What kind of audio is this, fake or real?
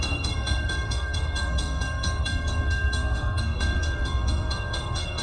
fake